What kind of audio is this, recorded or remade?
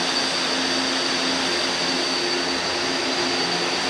recorded